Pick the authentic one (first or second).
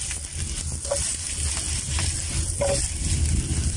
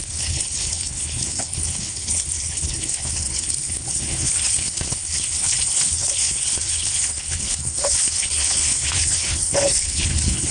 first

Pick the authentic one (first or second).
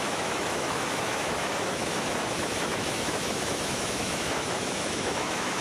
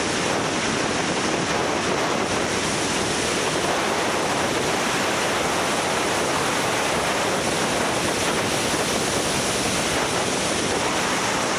second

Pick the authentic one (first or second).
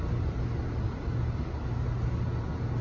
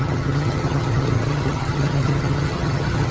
first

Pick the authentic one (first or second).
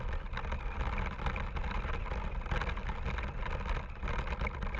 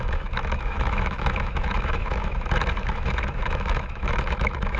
first